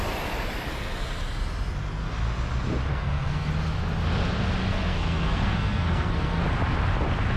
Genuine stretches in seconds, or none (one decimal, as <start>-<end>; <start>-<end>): 0.0-2.9; 3.5-4.6; 6.4-7.4